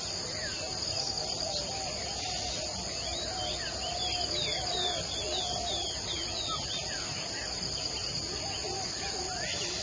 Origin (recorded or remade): recorded